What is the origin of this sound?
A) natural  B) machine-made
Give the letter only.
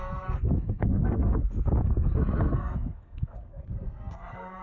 B